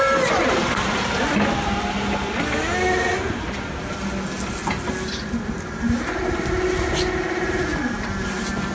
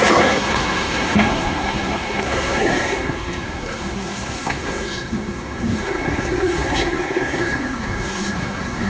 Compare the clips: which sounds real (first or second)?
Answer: first